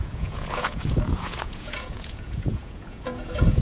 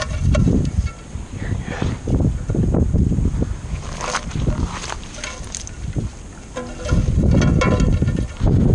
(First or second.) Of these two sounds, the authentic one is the second